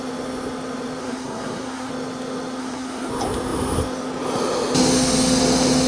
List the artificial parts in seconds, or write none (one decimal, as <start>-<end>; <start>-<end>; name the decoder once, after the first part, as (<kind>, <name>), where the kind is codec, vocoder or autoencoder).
1.0-1.9 (codec, SNAC); 2.6-3.1